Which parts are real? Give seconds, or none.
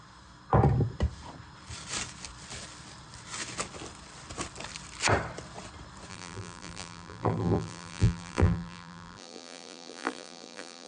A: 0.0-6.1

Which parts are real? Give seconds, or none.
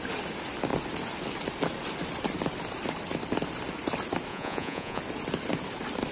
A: 0.0-4.3; 5.0-6.1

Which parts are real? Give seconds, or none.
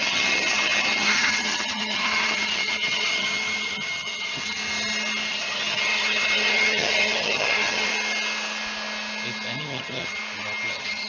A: 4.6-5.3; 7.9-9.6; 10.2-10.7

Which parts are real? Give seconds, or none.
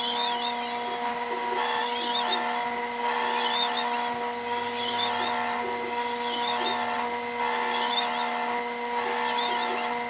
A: 0.0-10.1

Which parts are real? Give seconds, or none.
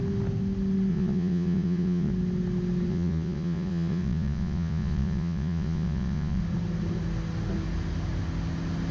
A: 0.0-0.9; 2.1-2.9; 6.4-8.9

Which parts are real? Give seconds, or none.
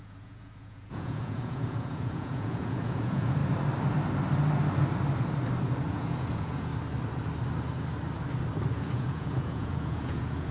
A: 3.4-5.8; 6.7-8.7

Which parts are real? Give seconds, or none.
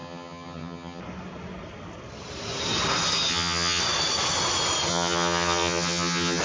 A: 1.0-3.3; 3.8-4.9